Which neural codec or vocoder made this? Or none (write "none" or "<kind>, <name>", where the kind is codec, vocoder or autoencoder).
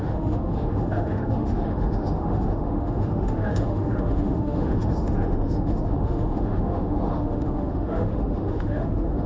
autoencoder, DAC-VAE